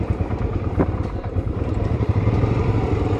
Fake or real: fake